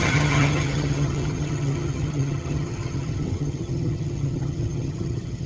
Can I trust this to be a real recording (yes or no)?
no